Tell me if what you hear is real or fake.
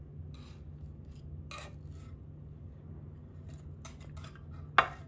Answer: real